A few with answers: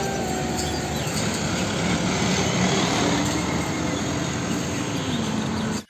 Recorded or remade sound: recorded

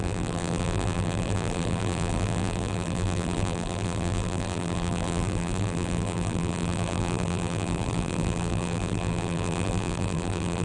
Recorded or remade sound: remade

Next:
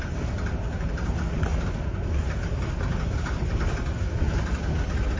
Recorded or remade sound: recorded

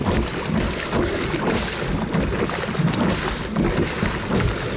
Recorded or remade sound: recorded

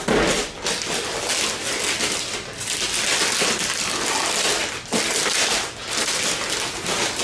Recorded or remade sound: recorded